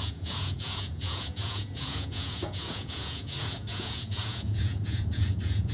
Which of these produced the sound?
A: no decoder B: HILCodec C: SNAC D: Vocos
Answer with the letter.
D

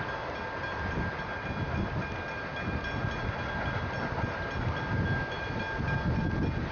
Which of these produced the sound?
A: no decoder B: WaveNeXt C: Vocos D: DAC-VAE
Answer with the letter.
A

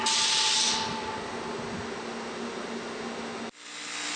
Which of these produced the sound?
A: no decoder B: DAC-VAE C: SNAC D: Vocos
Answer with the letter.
A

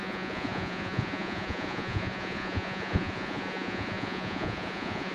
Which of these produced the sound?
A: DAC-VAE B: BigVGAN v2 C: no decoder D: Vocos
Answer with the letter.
D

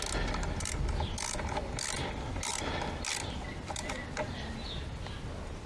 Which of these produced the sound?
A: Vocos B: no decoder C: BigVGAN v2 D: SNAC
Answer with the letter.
B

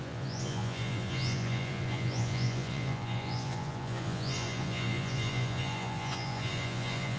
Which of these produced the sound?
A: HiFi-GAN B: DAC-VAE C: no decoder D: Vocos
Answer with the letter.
D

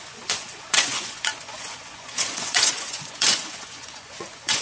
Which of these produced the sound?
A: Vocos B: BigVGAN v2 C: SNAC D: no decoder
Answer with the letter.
A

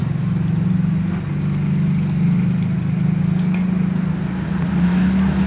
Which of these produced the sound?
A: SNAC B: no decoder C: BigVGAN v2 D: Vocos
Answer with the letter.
B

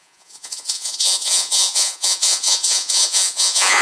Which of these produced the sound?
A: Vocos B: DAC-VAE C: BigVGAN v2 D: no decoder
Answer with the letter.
A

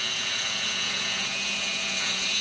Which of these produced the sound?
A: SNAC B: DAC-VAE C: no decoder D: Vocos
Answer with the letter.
D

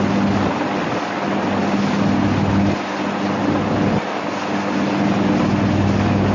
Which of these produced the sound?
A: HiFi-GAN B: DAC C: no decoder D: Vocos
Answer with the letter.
C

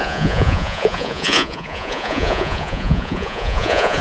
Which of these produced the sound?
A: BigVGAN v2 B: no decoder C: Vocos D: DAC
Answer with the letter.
C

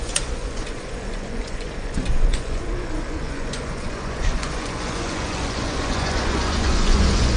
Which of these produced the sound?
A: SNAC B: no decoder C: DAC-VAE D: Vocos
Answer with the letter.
D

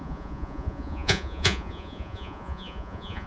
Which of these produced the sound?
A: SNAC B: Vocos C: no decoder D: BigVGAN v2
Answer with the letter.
B